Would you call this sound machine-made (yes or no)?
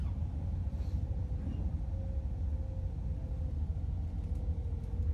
no